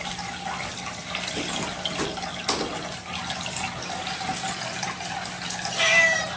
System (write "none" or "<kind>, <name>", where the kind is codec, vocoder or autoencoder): none